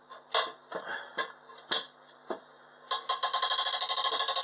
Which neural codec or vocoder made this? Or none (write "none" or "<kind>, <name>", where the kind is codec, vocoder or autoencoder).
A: none